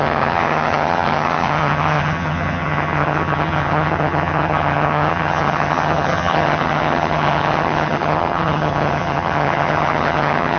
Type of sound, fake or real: fake